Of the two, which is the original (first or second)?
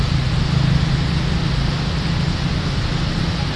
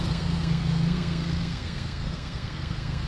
first